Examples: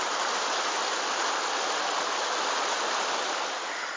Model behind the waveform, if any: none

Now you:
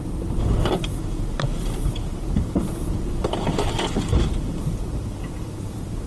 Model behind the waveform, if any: vocoder, BigVGAN v2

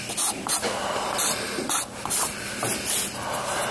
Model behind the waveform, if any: none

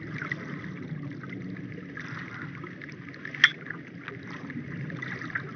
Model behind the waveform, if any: none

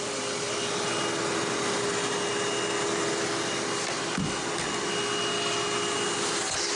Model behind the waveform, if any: none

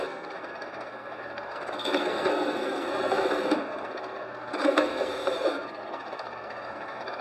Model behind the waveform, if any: codec, SNAC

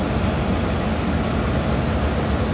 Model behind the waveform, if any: none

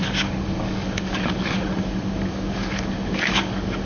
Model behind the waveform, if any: codec, DAC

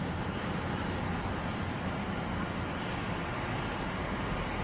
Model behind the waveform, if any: none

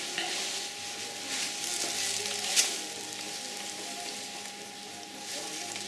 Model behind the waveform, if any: none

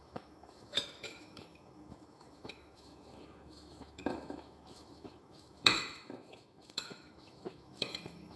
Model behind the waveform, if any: autoencoder, DAC-VAE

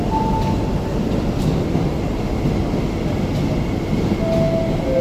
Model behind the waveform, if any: none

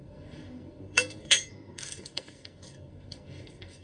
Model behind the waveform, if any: codec, SNAC